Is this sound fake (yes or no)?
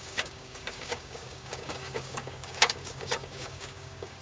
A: yes